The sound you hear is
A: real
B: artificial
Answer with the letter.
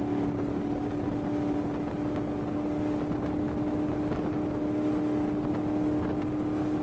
A